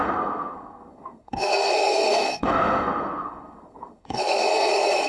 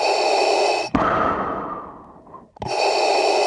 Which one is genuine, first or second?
second